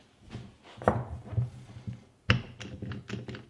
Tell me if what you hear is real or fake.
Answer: real